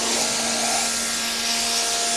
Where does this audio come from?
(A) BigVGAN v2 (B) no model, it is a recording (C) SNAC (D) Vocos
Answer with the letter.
B